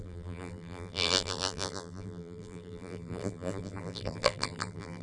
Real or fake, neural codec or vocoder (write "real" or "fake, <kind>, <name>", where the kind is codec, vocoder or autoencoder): fake, vocoder, BigVGAN v2